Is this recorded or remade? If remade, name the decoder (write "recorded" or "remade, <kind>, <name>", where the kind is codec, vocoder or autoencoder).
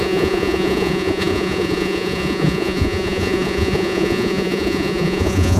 remade, vocoder, Vocos